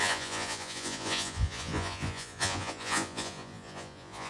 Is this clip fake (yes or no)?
yes